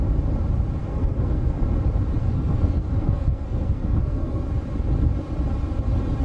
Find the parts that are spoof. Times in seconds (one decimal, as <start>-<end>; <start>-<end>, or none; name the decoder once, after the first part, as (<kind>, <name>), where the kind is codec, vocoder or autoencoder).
0.8-1.6 (codec, SNAC); 2.2-4.5

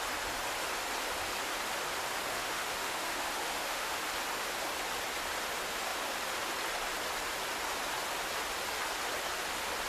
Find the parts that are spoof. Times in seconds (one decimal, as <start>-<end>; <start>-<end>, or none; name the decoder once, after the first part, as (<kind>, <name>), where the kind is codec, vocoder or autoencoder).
2.3-4.0 (autoencoder, DAC-VAE)